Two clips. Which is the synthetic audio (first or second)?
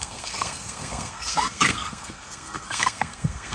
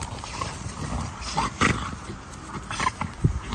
first